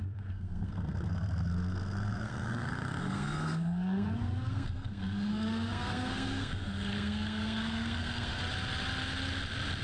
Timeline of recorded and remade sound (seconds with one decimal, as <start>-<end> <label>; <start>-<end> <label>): 0.0-8.4 remade; 8.4-9.8 recorded